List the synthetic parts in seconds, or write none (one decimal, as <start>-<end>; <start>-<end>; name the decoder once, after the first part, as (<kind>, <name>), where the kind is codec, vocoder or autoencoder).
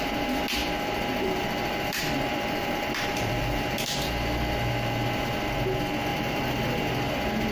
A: 0.6-4.1 (vocoder, BigVGAN v2); 6.1-6.8